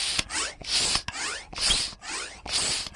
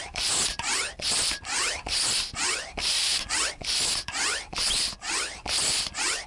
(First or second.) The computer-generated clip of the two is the second